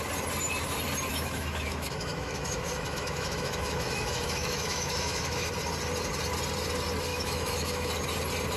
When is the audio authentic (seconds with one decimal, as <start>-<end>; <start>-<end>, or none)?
0.0-1.1; 5.5-7.1; 7.9-8.6